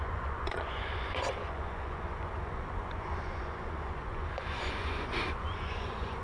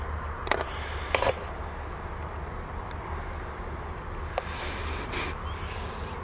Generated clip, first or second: first